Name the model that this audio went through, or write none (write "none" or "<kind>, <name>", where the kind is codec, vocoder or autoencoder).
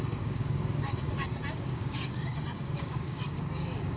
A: codec, DAC